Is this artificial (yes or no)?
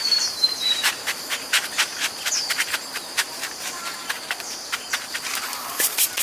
yes